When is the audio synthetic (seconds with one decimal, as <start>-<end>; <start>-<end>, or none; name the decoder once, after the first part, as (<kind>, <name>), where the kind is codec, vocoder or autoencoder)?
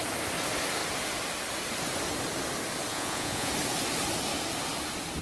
2.9-3.5 (vocoder, Vocos)